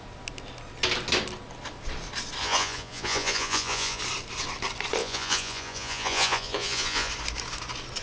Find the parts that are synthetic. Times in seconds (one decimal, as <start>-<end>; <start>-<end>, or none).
2.4-4.0; 5.0-7.1